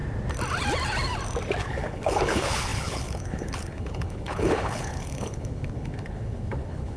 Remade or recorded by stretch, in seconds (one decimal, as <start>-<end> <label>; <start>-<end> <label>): 0.0-1.6 recorded; 1.6-7.0 remade

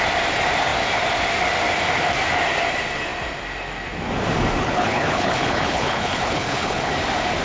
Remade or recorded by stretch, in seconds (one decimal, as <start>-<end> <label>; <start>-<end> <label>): 0.0-4.6 recorded; 4.6-6.9 remade; 6.9-7.4 recorded

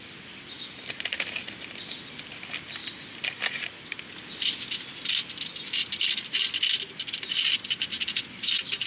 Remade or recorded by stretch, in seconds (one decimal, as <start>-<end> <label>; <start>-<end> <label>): 0.0-8.9 recorded

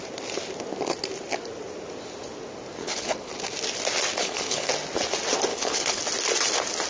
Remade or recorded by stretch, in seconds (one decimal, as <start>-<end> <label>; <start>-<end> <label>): 0.0-2.8 recorded; 2.8-3.3 remade; 3.3-4.2 recorded; 4.2-4.7 remade; 4.7-5.5 recorded; 5.5-6.0 remade; 6.0-6.9 recorded

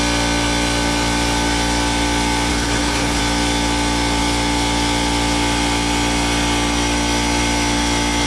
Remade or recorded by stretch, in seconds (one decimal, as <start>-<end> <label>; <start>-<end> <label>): 0.0-2.5 recorded; 2.5-3.2 remade; 3.2-8.3 recorded

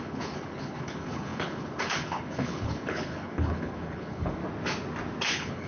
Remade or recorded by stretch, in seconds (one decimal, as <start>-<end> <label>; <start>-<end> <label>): 0.0-4.4 remade; 4.4-5.3 recorded; 5.3-5.7 remade